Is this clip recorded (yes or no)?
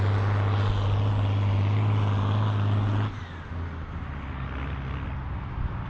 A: yes